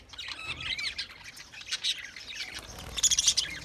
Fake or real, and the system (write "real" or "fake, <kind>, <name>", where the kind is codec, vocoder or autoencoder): real